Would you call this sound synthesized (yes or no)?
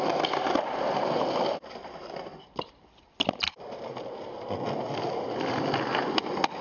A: no